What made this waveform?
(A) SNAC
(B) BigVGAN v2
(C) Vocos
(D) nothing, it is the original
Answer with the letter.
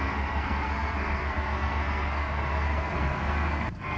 A